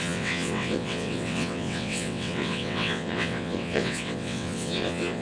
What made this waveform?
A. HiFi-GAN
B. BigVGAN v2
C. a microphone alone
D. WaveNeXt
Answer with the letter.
D